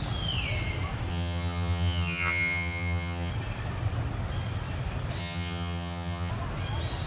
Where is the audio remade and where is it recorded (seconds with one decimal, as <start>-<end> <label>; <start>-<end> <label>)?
0.0-1.1 recorded; 1.1-3.3 remade; 3.3-5.2 recorded; 5.2-6.3 remade; 6.3-7.1 recorded

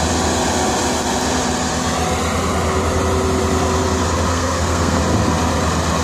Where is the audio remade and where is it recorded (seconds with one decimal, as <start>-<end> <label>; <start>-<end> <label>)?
0.0-4.3 recorded; 4.3-5.0 remade; 5.0-6.0 recorded

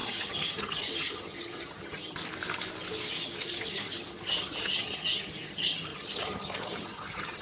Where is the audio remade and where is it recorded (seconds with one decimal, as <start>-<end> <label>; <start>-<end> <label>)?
0.0-2.2 remade; 2.2-3.1 recorded; 3.1-7.4 remade

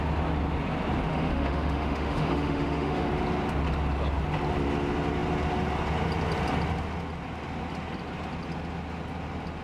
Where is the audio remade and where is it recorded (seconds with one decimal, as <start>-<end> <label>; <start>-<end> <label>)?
0.0-1.1 recorded; 1.1-3.1 remade; 3.1-9.6 recorded

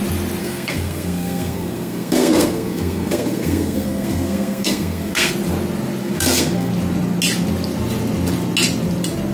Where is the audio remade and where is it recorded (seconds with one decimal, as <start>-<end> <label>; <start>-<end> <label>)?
0.0-0.4 recorded; 0.4-5.3 remade; 5.3-6.0 recorded; 6.0-6.7 remade; 6.7-9.3 recorded

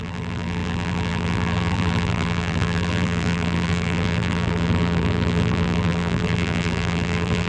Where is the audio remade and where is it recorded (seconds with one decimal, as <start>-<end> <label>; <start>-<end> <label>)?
0.0-7.5 remade